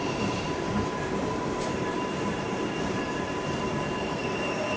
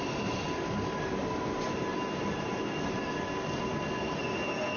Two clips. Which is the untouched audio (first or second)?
second